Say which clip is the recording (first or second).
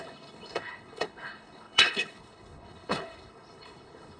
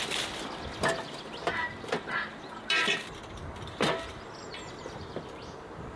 second